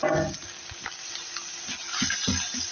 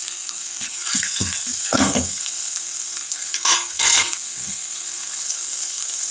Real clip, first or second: first